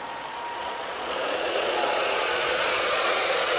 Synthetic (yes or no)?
yes